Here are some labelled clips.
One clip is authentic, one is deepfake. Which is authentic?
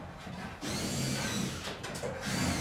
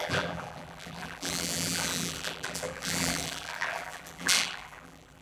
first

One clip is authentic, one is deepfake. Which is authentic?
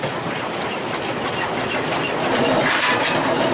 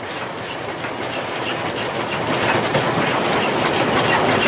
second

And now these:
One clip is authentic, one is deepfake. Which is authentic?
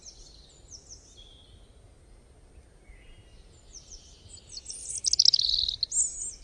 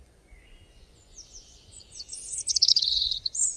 first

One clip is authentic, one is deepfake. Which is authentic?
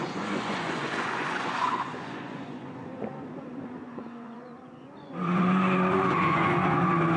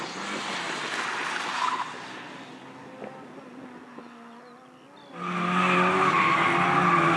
second